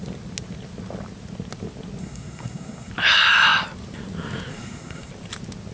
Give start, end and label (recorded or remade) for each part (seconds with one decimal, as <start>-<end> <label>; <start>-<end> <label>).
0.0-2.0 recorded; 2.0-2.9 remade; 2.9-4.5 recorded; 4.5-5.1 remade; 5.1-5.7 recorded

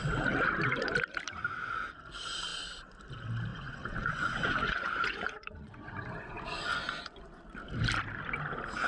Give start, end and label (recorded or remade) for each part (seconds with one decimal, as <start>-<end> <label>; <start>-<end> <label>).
0.0-3.5 recorded; 3.5-7.4 remade; 7.4-8.9 recorded

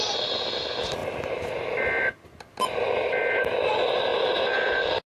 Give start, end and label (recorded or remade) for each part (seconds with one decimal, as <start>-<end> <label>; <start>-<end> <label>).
0.0-5.1 recorded